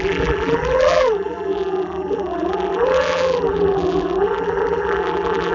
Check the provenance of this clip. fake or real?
fake